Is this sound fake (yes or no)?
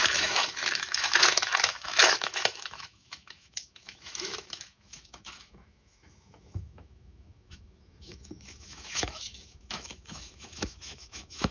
yes